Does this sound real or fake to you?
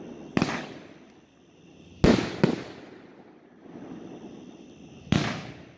real